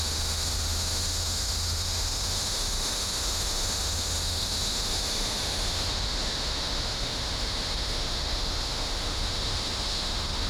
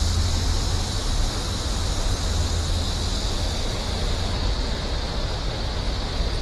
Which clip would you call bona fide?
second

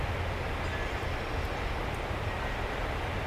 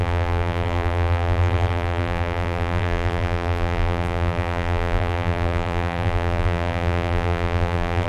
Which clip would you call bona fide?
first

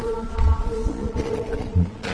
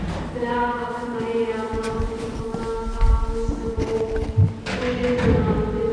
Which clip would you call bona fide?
second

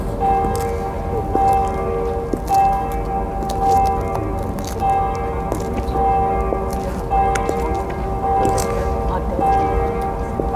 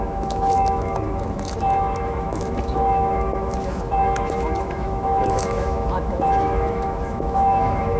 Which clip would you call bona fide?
first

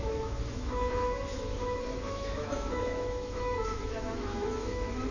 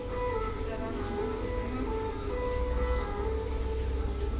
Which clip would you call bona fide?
second